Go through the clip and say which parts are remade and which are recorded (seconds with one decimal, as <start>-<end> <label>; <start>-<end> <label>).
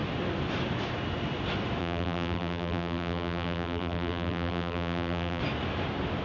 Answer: 0.0-1.8 recorded; 1.8-5.4 remade; 5.4-6.2 recorded